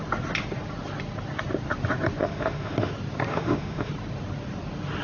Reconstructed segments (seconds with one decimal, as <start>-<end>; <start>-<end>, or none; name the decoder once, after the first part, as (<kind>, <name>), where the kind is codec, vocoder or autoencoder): 2.2-2.9 (autoencoder, DAC-VAE); 3.3-3.9